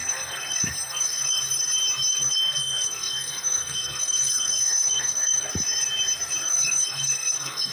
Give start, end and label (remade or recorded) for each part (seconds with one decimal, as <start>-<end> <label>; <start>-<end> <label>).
0.0-1.4 remade; 1.4-2.1 recorded; 2.1-5.5 remade; 5.5-6.4 recorded; 6.4-7.7 remade